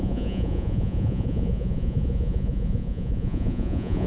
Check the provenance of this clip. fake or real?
fake